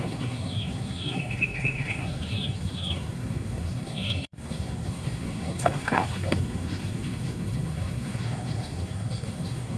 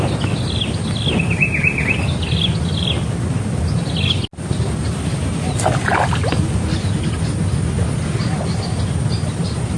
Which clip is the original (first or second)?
second